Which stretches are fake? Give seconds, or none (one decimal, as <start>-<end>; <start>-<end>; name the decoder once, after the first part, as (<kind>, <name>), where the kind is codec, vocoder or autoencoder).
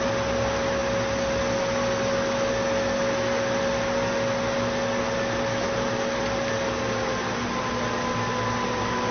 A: none